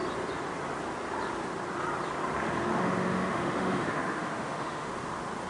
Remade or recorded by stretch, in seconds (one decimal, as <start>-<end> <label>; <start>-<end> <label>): 0.0-2.7 recorded; 2.7-4.9 remade; 4.9-5.5 recorded